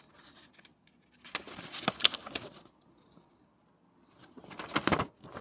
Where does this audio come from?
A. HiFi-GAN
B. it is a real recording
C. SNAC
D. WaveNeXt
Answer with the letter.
B